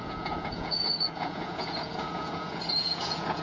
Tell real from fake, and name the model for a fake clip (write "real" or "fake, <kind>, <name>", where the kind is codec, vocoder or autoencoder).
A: fake, vocoder, Vocos